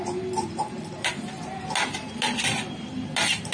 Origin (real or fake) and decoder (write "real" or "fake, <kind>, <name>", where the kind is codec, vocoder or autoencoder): real